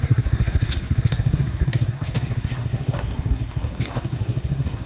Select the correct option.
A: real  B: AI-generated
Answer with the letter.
B